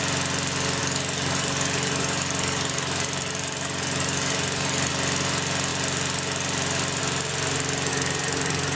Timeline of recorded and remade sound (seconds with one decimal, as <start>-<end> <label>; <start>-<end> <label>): 0.0-0.8 recorded; 0.8-4.9 remade; 4.9-7.9 recorded; 7.9-8.8 remade